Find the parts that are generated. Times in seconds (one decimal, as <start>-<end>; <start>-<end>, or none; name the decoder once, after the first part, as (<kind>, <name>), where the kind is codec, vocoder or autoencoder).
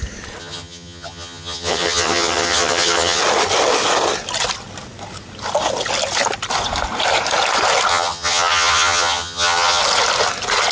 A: 0.4-3.2 (vocoder, HiFi-GAN); 7.9-9.8